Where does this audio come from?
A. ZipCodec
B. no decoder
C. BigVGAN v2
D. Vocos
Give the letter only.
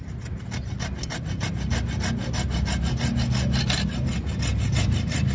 B